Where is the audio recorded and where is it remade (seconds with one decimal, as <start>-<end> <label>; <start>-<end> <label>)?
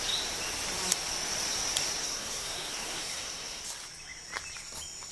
0.0-2.0 recorded; 2.0-3.6 remade; 3.6-5.1 recorded